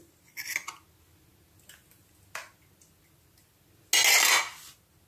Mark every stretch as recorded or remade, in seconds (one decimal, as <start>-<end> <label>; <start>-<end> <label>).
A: 0.0-5.1 recorded